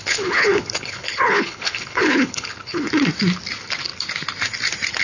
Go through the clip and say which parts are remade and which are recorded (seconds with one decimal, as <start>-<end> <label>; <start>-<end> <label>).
0.0-2.9 remade; 2.9-5.0 recorded